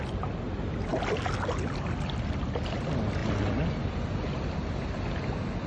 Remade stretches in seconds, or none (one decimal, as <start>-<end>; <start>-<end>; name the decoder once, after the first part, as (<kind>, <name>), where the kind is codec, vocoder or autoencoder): none